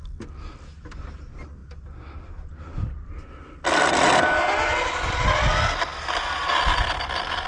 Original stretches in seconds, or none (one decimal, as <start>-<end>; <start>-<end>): 0.0-7.5